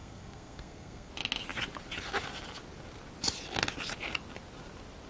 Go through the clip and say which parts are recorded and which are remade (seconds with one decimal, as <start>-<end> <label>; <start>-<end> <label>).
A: 0.0-1.1 remade; 1.1-5.1 recorded